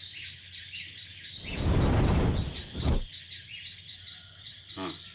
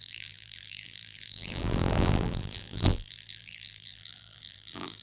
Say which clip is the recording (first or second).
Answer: first